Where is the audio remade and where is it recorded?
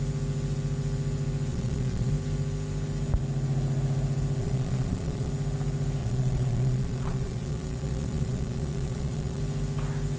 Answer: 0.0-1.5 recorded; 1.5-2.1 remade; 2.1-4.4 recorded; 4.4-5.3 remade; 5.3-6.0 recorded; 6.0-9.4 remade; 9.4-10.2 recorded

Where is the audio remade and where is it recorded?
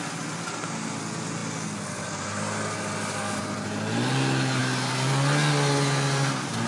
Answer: 0.0-6.7 recorded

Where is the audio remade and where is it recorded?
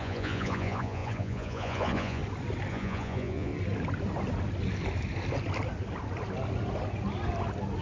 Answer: 0.0-2.2 remade; 2.2-2.7 recorded; 2.7-3.5 remade; 3.5-7.8 recorded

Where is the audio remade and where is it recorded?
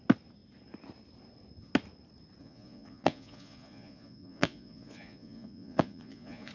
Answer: 0.0-2.4 recorded; 2.4-6.5 remade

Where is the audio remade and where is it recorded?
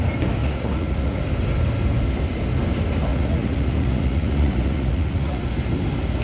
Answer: 0.0-0.4 recorded; 0.4-1.2 remade; 1.2-3.1 recorded; 3.1-5.4 remade; 5.4-6.2 recorded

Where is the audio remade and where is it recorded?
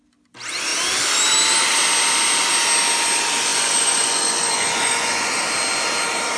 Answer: 0.0-3.5 recorded; 3.5-5.4 remade; 5.4-6.4 recorded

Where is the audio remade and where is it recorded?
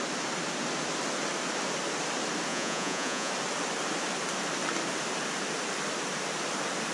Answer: 0.0-2.5 recorded; 2.5-3.3 remade; 3.3-6.9 recorded